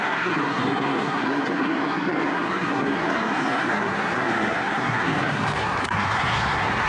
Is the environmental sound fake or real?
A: fake